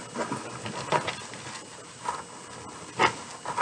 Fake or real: real